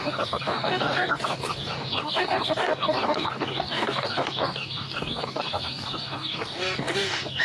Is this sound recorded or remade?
remade